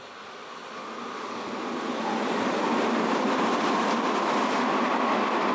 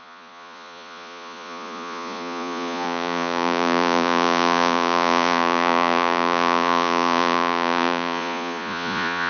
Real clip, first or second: first